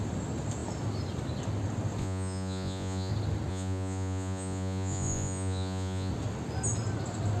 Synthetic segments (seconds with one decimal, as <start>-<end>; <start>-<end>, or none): 2.0-3.1; 3.5-6.1

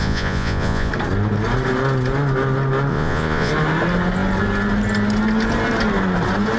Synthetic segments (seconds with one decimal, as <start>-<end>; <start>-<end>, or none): 0.0-0.9; 2.9-3.5

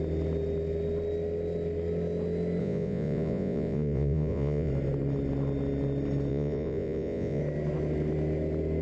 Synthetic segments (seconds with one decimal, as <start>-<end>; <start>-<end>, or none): 2.6-4.7; 6.3-7.4

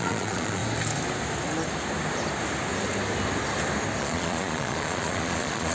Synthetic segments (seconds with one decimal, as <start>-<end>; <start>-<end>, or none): 0.0-0.6; 4.0-5.7